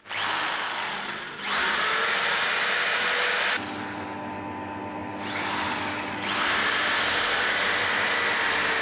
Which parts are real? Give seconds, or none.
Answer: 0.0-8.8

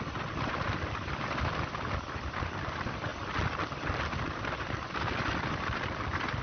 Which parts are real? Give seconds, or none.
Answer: 3.1-4.2

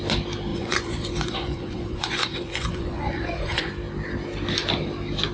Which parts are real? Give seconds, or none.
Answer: 0.0-0.5; 3.7-5.3

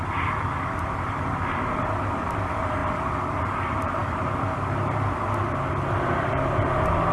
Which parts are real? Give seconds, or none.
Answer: 0.0-7.1

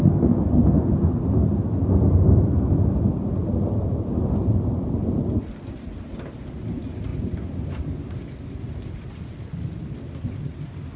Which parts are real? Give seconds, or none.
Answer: 0.0-11.0

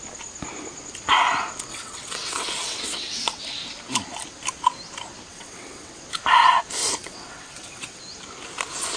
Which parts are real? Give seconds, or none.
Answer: 0.0-1.7; 3.4-5.3; 6.0-7.0; 8.0-9.0